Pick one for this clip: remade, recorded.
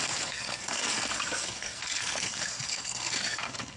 remade